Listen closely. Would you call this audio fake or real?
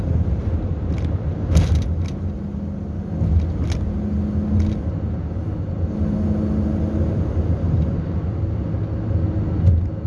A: real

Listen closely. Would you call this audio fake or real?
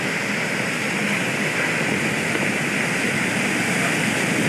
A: real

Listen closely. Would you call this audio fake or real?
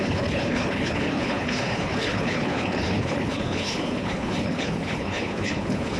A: fake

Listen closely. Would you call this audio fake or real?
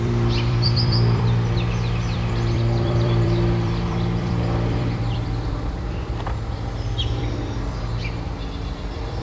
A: fake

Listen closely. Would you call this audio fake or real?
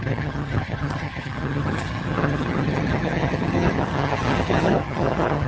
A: fake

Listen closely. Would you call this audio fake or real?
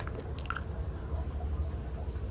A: real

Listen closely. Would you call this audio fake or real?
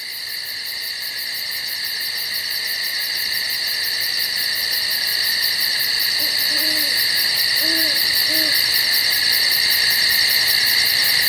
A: real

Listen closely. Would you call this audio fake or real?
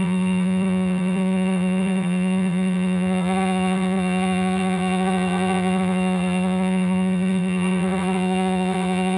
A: fake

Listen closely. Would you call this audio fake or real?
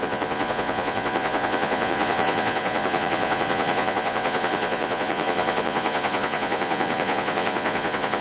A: fake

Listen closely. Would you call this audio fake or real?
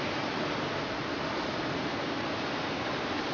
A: real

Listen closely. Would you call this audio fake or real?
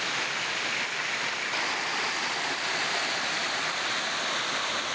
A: real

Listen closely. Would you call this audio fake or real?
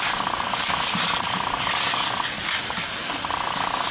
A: real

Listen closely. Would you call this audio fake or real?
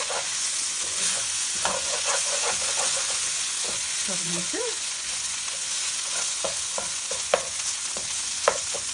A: fake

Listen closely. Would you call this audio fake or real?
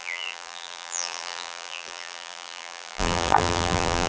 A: fake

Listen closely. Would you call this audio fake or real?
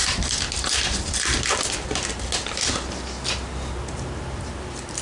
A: real